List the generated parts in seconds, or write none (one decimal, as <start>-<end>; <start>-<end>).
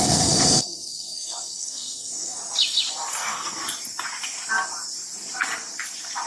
0.0-2.4; 2.9-3.6